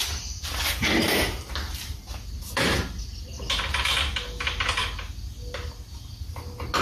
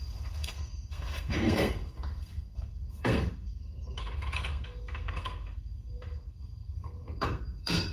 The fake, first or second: second